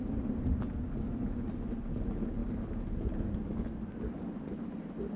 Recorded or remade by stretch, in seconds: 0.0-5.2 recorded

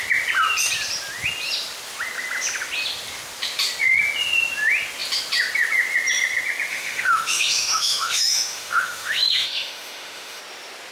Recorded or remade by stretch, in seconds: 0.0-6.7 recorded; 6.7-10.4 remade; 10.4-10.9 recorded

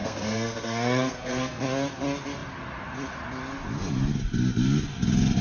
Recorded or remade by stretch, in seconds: 0.0-1.6 remade; 1.6-5.4 recorded